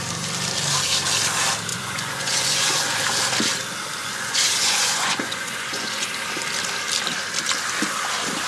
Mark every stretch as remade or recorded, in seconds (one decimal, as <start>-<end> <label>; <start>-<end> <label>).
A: 0.0-1.7 recorded; 1.7-3.0 remade; 3.0-4.0 recorded; 4.0-6.1 remade; 6.1-8.5 recorded

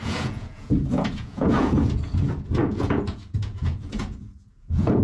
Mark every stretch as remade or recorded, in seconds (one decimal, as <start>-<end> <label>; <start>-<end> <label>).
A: 0.0-5.0 remade

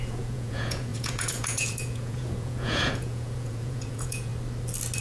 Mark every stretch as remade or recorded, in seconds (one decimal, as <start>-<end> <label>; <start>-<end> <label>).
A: 0.0-4.3 remade; 4.3-5.0 recorded

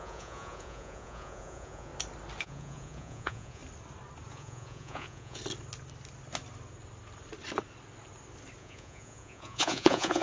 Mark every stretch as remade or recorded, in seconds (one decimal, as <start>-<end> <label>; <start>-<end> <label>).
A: 0.0-1.9 remade; 1.9-2.4 recorded; 2.4-3.6 remade; 3.6-4.3 recorded; 4.3-5.4 remade; 5.4-8.6 recorded; 8.6-10.2 remade

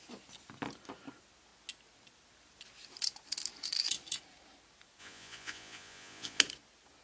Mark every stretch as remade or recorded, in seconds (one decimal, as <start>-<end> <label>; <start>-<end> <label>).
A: 0.0-5.0 recorded; 5.0-6.4 remade; 6.4-7.0 recorded

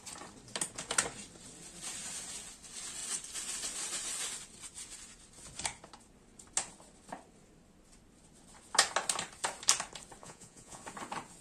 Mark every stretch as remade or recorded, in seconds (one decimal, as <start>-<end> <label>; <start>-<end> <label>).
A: 0.0-10.2 recorded; 10.2-10.8 remade; 10.8-11.4 recorded

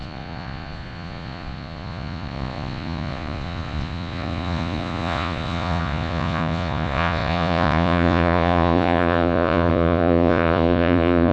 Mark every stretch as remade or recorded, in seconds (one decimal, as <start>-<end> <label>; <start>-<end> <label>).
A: 0.0-11.3 remade